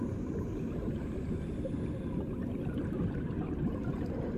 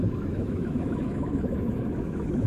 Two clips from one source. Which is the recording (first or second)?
first